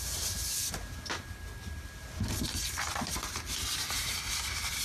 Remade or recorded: recorded